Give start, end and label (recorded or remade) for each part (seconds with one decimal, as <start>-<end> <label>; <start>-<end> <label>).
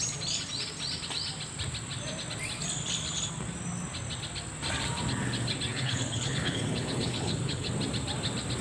0.0-5.7 recorded; 5.7-7.7 remade; 7.7-8.6 recorded